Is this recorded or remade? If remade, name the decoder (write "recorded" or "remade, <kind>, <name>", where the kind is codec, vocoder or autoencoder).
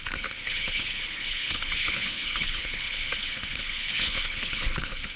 remade, codec, HILCodec